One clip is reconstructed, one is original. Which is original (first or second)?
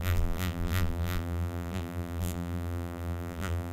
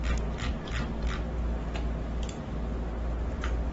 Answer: second